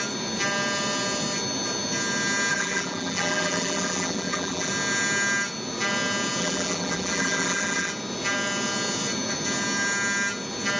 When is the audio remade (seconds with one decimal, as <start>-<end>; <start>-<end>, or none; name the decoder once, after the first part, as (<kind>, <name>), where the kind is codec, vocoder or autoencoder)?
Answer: 2.5-4.7 (vocoder, BigVGAN v2); 6.4-7.9

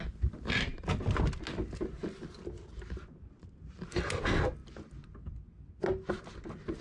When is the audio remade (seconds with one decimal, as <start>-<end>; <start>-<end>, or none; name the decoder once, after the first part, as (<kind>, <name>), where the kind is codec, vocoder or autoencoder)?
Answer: none

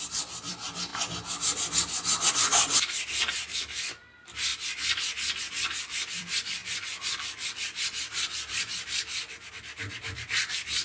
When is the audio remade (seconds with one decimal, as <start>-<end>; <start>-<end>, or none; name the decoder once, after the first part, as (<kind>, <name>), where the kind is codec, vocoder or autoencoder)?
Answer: 0.0-0.9 (vocoder, BigVGAN v2); 2.3-4.5; 5.4-10.8

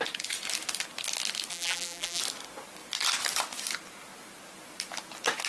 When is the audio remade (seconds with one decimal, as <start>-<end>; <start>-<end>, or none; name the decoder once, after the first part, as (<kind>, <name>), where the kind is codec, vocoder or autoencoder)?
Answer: 1.5-2.2 (vocoder, BigVGAN v2)

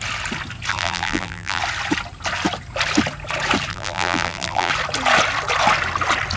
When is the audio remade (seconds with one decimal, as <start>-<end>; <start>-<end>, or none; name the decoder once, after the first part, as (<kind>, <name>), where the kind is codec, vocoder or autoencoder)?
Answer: 0.7-1.6 (vocoder, BigVGAN v2); 3.7-4.7

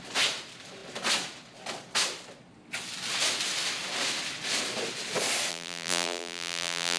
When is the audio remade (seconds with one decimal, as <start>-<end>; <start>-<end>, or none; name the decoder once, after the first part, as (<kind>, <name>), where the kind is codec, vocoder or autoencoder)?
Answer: 5.5-7.0 (vocoder, BigVGAN v2)